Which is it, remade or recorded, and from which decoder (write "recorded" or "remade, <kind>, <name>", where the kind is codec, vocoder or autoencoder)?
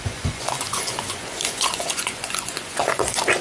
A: remade, vocoder, Vocos